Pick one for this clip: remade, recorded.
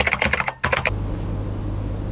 recorded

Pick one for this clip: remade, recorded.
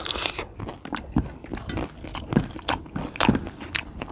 recorded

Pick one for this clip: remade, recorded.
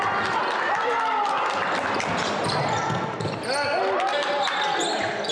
recorded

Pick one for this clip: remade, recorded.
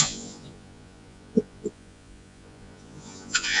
remade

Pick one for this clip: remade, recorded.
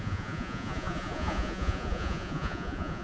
remade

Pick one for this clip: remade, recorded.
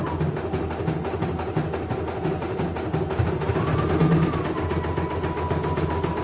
recorded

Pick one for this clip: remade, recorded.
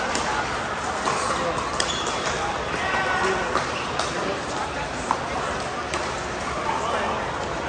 recorded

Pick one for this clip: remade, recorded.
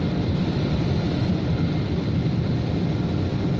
recorded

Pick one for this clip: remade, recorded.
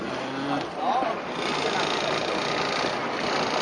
recorded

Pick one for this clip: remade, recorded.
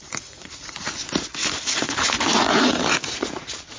remade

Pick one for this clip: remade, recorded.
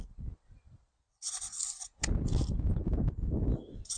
recorded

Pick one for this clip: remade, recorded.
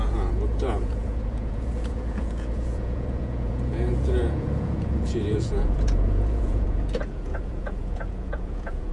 remade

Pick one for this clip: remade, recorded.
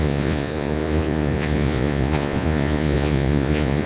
remade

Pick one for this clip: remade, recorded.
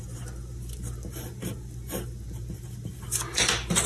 recorded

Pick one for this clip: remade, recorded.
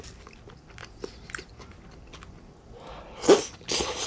recorded